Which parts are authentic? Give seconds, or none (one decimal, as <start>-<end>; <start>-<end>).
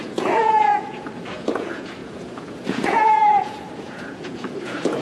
none